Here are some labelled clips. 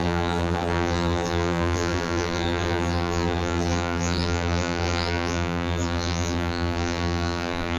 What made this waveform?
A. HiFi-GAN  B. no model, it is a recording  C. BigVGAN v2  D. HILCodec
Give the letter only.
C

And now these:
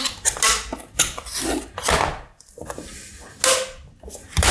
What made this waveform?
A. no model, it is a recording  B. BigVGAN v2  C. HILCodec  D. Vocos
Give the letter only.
A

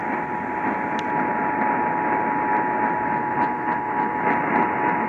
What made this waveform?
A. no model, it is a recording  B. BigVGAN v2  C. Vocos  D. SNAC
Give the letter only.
A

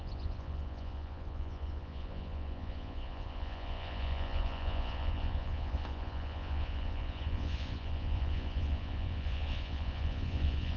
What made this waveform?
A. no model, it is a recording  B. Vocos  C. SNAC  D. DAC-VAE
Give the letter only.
B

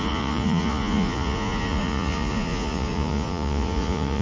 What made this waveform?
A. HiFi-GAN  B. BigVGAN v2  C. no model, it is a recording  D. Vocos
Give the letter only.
D